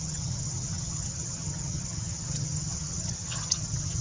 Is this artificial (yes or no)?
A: yes